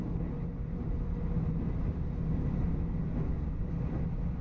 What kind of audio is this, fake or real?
real